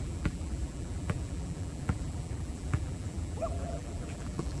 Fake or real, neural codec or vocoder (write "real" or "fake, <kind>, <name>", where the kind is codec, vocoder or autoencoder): fake, vocoder, BigVGAN v2